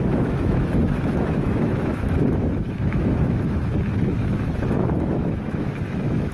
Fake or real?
fake